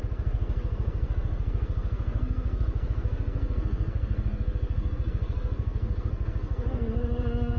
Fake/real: fake